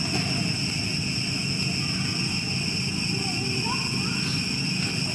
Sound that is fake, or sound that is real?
real